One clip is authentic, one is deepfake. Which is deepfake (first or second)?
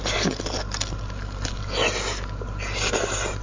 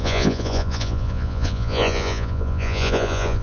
second